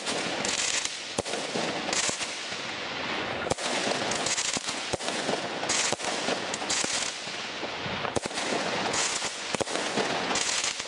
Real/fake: fake